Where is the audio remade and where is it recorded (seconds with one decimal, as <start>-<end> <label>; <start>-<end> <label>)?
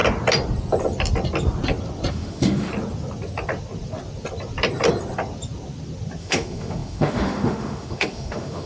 0.0-2.1 recorded; 2.1-2.7 remade; 2.7-6.2 recorded; 6.2-8.7 remade